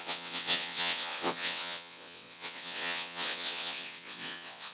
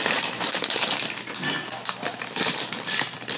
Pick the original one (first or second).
second